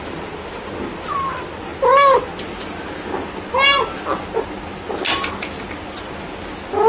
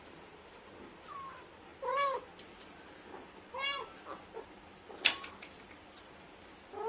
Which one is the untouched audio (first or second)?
first